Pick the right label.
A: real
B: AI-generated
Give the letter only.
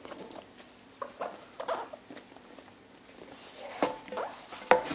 A